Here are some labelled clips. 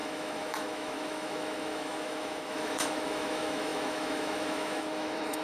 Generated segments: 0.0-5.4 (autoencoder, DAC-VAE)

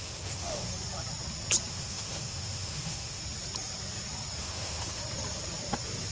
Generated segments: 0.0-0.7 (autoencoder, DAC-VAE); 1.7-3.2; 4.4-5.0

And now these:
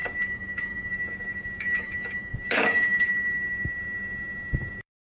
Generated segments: 0.0-5.2 (autoencoder, DAC-VAE)

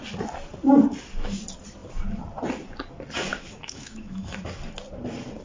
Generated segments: 3.3-4.4 (autoencoder, DAC-VAE)